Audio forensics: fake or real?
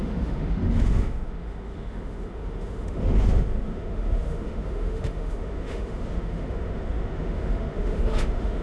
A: fake